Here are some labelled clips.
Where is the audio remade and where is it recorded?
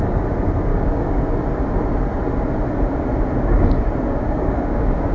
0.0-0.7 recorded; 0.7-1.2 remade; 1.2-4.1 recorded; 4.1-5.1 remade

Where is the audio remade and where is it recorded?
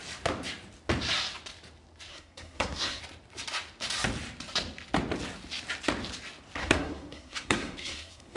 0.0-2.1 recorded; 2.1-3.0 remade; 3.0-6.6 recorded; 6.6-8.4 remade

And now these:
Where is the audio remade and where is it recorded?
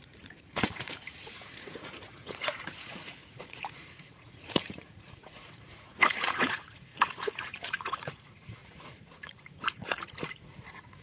0.0-11.0 remade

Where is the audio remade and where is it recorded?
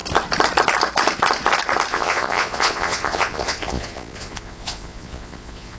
0.0-1.9 recorded; 1.9-5.8 remade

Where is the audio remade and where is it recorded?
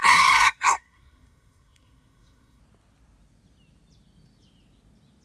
0.0-2.6 remade; 2.6-5.2 recorded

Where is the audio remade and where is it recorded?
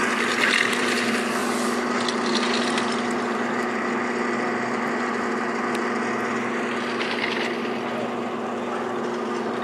0.0-9.6 recorded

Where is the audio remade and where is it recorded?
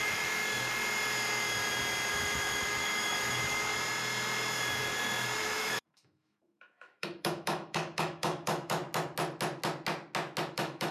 0.0-0.4 remade; 0.4-2.1 recorded; 2.1-3.7 remade; 3.7-5.4 recorded; 5.4-8.8 remade; 8.8-10.5 recorded; 10.5-10.9 remade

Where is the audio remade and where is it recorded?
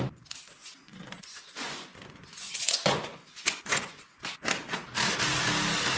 0.0-0.6 recorded; 0.6-4.2 remade; 4.2-6.0 recorded